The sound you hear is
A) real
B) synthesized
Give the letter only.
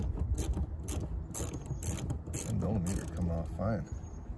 A